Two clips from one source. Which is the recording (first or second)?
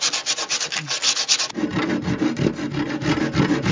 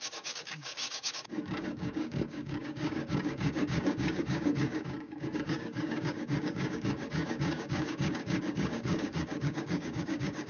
first